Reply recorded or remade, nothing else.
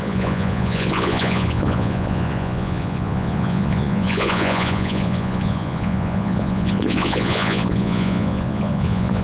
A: remade